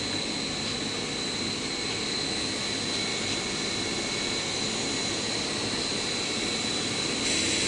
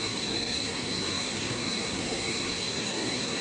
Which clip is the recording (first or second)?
first